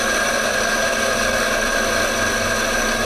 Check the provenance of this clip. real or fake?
real